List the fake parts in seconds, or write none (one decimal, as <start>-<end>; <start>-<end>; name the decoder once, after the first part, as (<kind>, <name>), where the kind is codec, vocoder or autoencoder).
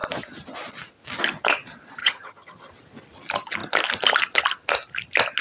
2.0-2.7 (vocoder, HiFi-GAN)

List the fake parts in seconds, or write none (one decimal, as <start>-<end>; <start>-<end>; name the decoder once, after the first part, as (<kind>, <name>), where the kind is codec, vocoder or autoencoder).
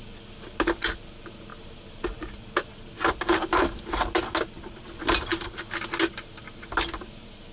none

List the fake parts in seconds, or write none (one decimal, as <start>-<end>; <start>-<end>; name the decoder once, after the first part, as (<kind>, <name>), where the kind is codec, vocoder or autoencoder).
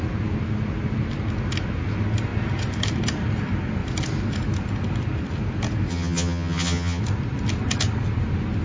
5.9-7.0 (vocoder, HiFi-GAN)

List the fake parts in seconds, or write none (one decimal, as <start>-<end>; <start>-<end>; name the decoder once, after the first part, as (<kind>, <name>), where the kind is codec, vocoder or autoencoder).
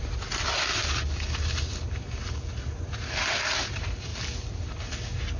none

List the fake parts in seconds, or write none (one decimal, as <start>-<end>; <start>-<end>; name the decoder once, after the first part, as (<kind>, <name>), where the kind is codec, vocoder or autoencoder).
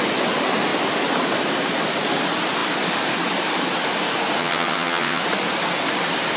4.4-5.2 (vocoder, HiFi-GAN)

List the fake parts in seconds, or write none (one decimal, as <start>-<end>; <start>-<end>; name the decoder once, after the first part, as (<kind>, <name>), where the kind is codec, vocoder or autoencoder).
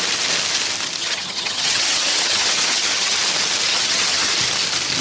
1.0-3.2 (vocoder, HiFi-GAN); 3.7-4.3